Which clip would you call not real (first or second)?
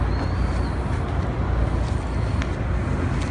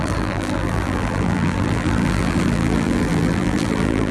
second